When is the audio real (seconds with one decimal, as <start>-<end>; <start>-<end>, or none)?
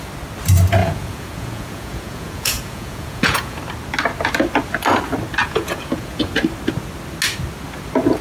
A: 0.0-0.8; 3.6-5.4; 6.3-8.2